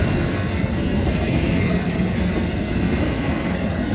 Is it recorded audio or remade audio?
remade